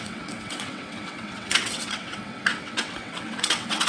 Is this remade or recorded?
remade